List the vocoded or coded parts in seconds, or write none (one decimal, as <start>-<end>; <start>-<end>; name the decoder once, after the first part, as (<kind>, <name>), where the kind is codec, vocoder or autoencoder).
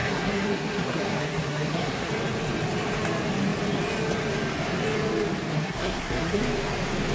0.0-2.1 (codec, SNAC); 5.5-6.4